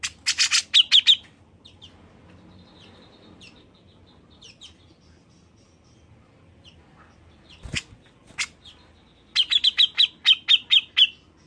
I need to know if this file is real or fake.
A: real